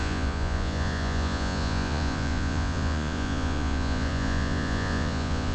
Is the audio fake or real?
fake